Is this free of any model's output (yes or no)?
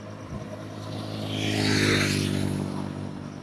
yes